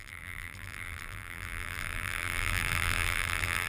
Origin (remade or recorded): remade